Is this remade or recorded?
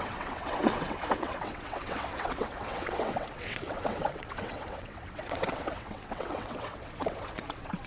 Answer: remade